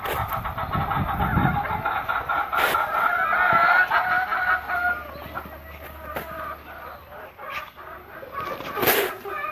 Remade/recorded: recorded